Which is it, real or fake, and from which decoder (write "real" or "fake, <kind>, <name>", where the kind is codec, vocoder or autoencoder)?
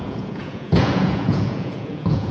fake, vocoder, Vocos